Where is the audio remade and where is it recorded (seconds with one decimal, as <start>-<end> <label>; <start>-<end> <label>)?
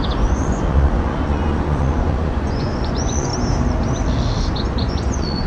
0.0-3.3 remade; 3.3-4.4 recorded; 4.4-5.5 remade